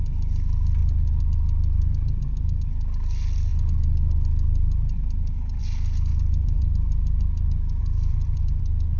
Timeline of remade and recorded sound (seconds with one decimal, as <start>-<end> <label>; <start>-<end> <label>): 0.0-6.1 recorded; 6.1-6.7 remade; 6.7-7.8 recorded; 7.8-8.6 remade; 8.6-9.0 recorded